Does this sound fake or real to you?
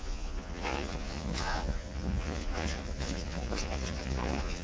fake